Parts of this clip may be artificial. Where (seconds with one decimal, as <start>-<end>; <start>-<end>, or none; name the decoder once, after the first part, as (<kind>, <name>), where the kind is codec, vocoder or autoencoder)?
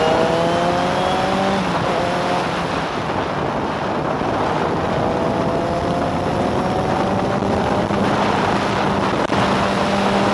7.4-8.3 (vocoder, BigVGAN v2)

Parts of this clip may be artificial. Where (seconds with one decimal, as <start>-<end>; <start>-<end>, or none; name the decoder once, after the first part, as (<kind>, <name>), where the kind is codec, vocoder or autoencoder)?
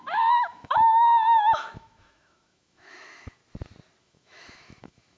0.0-3.4 (autoencoder, DAC-VAE); 4.0-5.2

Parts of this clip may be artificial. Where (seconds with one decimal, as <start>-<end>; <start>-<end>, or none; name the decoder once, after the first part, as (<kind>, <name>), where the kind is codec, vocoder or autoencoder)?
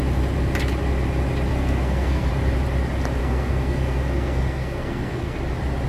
1.5-2.3 (codec, SNAC); 3.2-5.4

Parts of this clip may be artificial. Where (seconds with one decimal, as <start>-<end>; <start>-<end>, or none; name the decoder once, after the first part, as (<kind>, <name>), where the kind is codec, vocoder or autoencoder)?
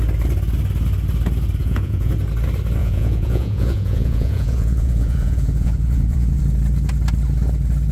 1.6-2.1 (vocoder, Vocos); 2.8-6.4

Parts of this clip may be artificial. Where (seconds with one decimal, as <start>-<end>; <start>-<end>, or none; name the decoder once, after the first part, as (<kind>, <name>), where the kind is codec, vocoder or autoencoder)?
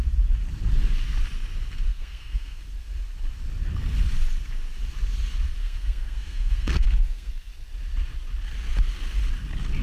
1.9-2.6 (codec, SNAC); 5.6-7.5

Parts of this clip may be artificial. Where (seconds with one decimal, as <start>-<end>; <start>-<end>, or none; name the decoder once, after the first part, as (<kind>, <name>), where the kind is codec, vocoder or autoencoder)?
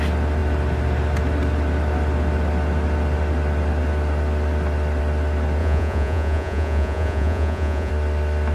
5.6-7.9 (vocoder, Vocos)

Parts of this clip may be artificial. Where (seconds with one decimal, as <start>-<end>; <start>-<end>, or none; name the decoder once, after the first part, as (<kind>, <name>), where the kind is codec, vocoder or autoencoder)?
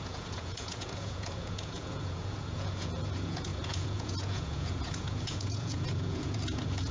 0.0-6.9 (vocoder, Vocos)